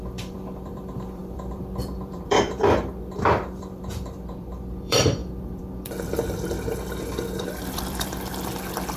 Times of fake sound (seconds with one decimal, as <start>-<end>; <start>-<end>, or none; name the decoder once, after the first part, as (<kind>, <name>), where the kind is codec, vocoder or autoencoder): 0.0-9.0 (vocoder, BigVGAN v2)